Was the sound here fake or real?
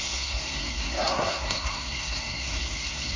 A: fake